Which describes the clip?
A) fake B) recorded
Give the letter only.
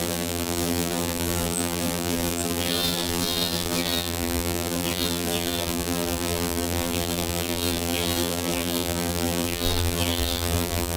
A